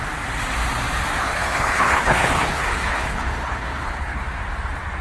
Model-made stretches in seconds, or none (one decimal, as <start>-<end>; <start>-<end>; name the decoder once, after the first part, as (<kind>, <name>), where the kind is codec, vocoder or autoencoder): 1.2-4.2 (codec, HILCodec)